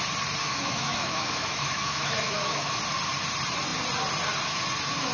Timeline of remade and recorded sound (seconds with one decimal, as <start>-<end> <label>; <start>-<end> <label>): 0.0-0.4 recorded; 0.4-2.8 remade; 2.8-5.1 recorded